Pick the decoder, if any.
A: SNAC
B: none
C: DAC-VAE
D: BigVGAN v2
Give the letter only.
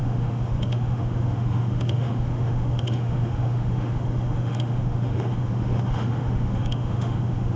C